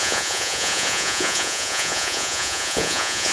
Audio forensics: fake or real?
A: fake